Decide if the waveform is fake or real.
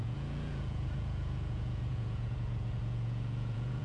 fake